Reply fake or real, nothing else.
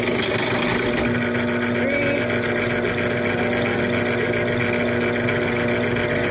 real